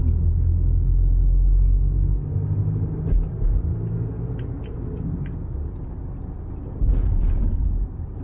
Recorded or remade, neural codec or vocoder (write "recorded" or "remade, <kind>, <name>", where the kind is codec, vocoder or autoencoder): recorded